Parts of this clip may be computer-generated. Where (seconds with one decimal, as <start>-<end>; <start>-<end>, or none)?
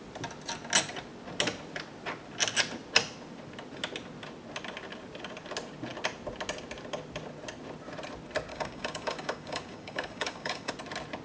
8.5-10.7